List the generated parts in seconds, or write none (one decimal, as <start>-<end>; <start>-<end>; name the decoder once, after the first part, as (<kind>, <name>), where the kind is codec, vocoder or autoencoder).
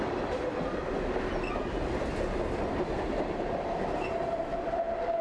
none